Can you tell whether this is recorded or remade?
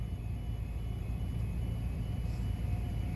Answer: recorded